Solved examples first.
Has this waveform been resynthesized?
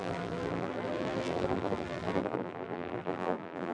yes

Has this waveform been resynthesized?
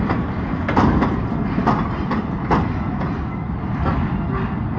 no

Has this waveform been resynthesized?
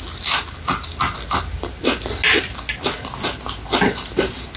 no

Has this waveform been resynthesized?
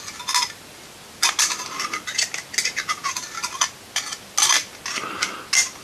no